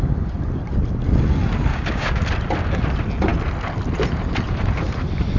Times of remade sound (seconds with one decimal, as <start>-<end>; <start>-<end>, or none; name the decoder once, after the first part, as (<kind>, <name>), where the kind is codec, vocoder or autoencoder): 1.7-2.2 (codec, DAC)